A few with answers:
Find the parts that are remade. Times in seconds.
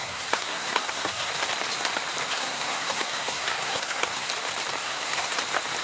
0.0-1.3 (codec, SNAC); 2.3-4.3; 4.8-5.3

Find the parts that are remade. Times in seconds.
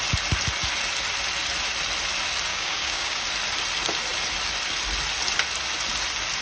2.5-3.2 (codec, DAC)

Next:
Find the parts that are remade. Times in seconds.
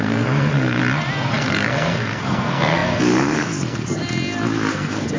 0.0-0.8 (codec, SNAC); 1.3-4.0; 4.7-5.2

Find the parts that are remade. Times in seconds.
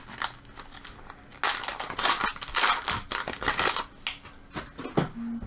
none